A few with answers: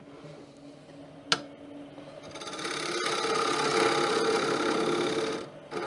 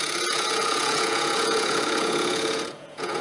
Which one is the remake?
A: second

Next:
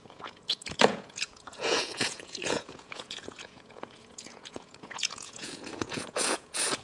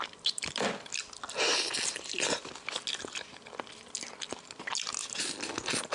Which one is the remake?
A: first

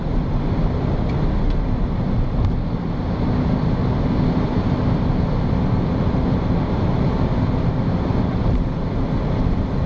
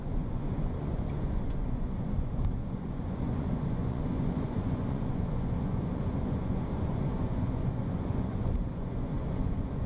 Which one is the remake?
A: second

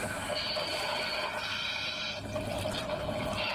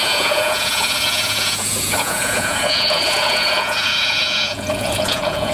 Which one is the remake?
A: second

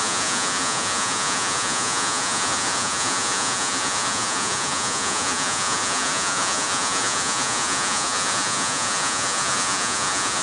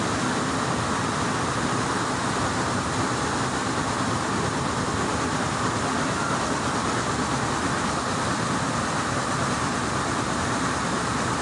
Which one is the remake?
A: first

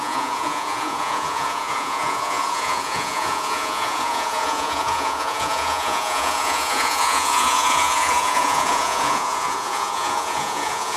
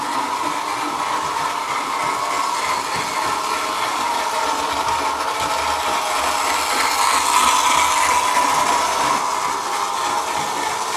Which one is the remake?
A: first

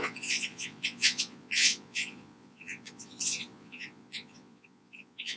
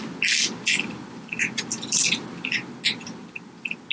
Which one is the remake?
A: first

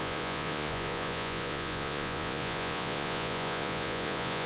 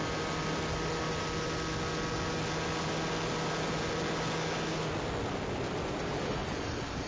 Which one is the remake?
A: first